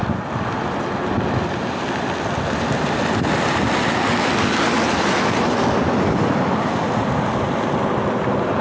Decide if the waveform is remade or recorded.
recorded